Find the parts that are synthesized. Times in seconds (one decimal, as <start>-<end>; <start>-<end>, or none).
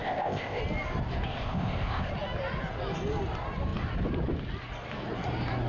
0.0-0.6; 1.3-2.1